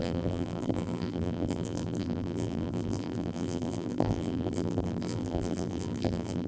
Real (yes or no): no